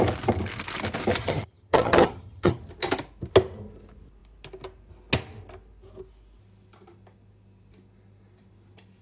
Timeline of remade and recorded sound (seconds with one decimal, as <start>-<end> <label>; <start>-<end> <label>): 0.0-1.2 recorded; 1.2-2.6 remade; 2.6-9.0 recorded